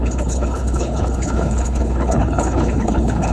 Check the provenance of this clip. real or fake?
fake